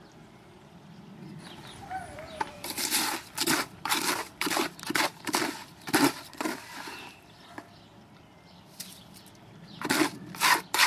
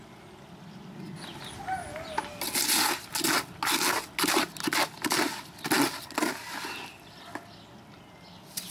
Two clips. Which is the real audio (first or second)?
second